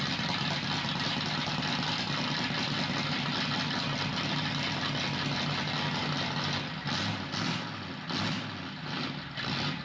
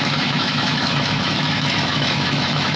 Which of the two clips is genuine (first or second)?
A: first